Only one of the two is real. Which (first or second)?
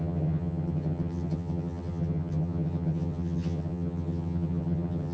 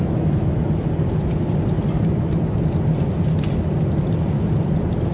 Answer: second